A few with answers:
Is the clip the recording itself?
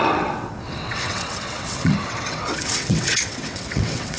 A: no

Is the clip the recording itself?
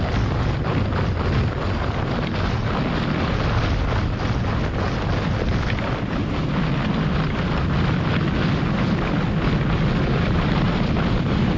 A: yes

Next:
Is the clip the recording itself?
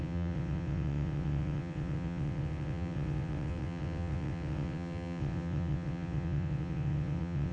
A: no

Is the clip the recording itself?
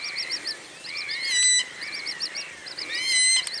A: yes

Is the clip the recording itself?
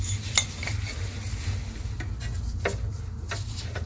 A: yes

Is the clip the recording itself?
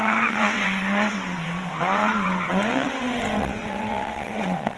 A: no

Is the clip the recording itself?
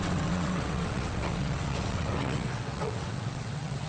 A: no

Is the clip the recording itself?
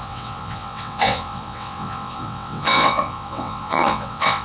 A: no